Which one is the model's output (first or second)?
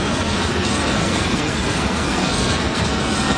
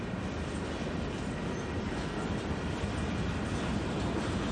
first